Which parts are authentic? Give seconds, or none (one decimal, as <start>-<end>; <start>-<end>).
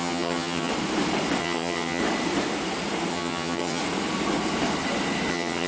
0.7-1.4; 2.0-3.1; 3.8-5.3